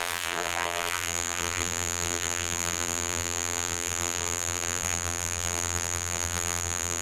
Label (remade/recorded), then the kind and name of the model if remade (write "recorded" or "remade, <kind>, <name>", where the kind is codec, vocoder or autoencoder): remade, vocoder, BigVGAN v2